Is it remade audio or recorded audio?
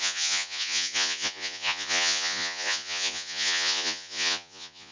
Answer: remade